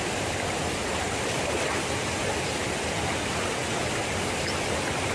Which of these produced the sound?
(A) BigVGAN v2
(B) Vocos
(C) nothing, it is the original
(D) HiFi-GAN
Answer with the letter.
C